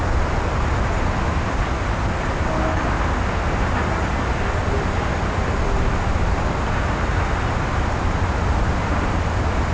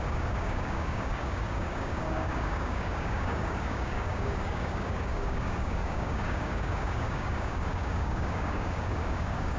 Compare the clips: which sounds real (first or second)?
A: first